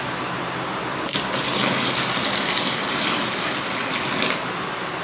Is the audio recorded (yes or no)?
yes